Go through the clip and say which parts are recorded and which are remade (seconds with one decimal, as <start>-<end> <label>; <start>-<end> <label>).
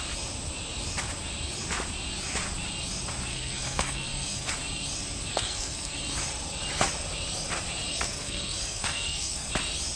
0.0-3.3 recorded; 3.3-4.5 remade; 4.5-5.3 recorded; 5.3-6.0 remade; 6.0-7.9 recorded; 7.9-9.5 remade; 9.5-10.0 recorded